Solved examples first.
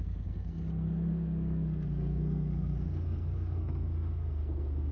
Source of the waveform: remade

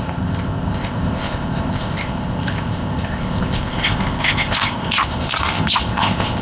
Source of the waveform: remade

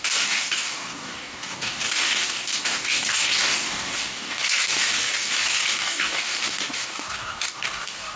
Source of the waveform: remade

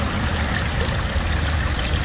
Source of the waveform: recorded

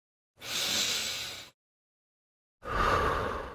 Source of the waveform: recorded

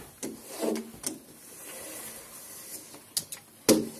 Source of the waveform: recorded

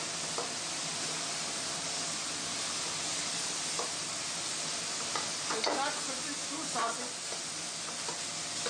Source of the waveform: recorded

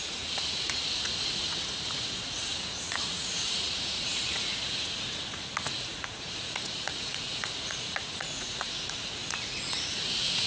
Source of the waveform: remade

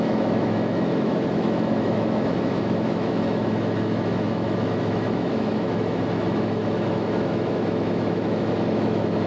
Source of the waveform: remade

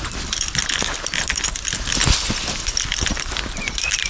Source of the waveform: remade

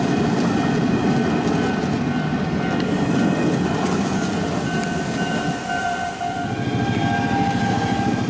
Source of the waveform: recorded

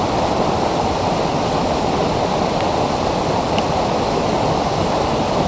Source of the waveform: recorded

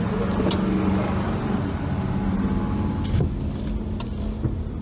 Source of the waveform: recorded